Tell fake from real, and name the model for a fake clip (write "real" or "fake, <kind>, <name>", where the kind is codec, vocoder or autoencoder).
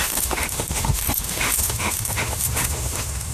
fake, autoencoder, DAC-VAE